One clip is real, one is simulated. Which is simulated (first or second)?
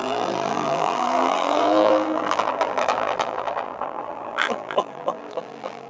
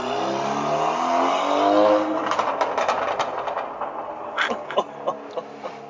first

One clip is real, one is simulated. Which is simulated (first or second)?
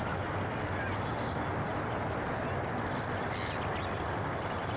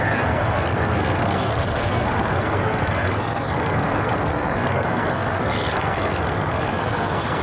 second